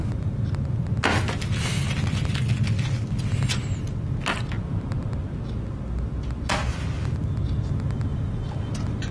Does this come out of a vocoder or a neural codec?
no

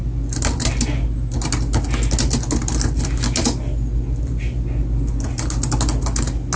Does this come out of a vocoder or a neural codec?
no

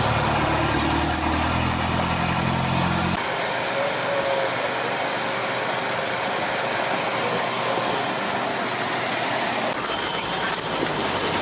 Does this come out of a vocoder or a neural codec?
no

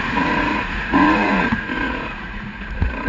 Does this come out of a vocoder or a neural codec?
yes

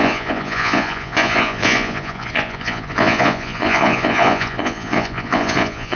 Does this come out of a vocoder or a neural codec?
yes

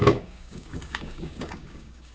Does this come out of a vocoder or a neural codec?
yes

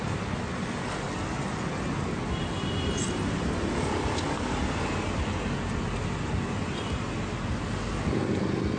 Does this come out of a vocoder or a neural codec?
no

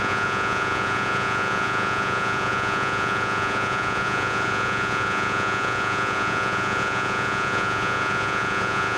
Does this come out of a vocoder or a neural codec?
yes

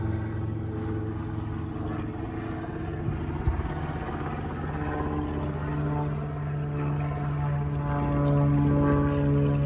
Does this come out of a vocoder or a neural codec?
no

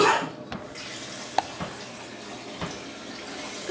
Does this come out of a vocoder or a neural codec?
no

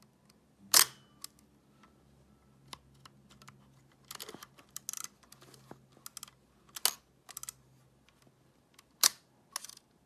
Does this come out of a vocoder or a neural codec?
no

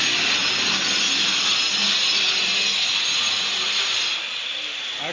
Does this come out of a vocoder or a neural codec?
no